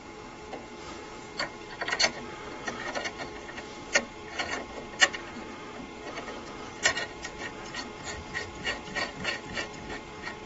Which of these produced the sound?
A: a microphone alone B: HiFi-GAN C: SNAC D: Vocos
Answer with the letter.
D